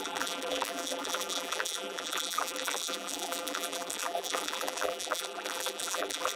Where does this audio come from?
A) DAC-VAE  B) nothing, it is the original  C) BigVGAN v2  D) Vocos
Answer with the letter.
C